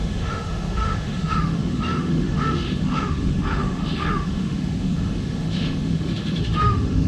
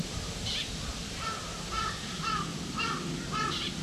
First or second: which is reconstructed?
first